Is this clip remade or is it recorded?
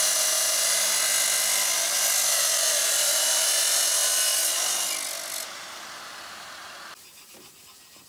recorded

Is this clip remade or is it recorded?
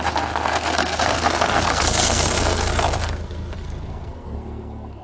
remade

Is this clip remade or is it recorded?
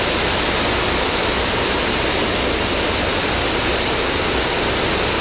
recorded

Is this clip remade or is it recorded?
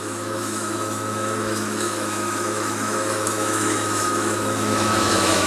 remade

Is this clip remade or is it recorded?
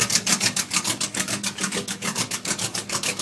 remade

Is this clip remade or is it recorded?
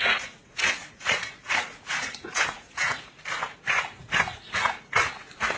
remade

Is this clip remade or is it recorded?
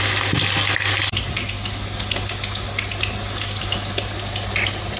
recorded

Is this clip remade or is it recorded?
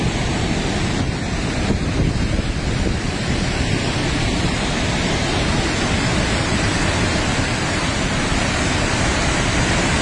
recorded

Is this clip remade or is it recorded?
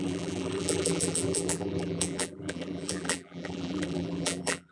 remade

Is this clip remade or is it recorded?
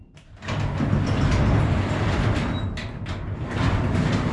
recorded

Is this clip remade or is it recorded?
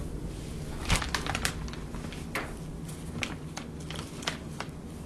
recorded